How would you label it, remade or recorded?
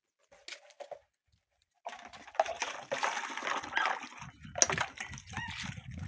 recorded